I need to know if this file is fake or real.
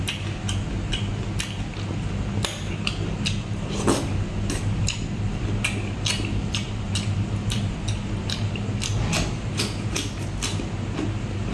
real